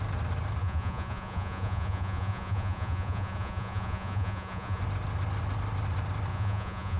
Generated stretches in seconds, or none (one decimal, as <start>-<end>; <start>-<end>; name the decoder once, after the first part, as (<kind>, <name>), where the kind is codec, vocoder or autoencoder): 0.6-4.8 (vocoder, Vocos); 6.3-7.0